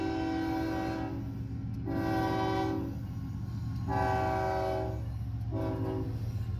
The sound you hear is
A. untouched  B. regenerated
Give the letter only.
A